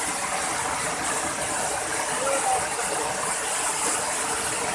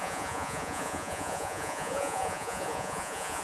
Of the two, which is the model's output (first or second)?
second